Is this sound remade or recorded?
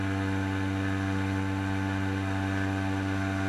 recorded